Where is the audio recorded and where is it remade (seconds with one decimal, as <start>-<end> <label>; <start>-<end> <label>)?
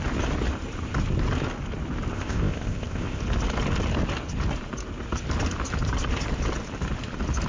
0.0-2.1 recorded; 2.1-3.2 remade; 3.2-7.5 recorded